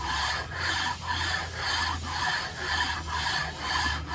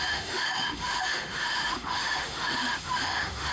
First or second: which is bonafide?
first